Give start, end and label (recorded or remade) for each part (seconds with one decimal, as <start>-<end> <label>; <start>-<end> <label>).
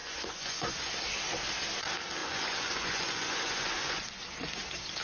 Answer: 0.0-0.9 remade; 0.9-2.2 recorded; 2.2-4.0 remade; 4.0-5.0 recorded